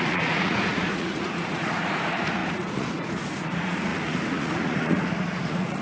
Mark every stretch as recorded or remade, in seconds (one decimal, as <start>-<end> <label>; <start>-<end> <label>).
0.0-5.8 remade